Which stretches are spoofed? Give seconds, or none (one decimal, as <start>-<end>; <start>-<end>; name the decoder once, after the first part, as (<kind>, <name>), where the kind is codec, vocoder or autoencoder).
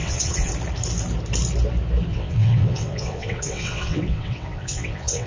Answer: 0.0-0.5 (vocoder, WaveNeXt); 2.1-5.3